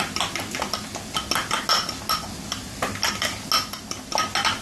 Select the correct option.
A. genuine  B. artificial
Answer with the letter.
A